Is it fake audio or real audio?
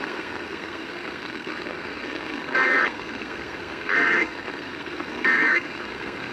fake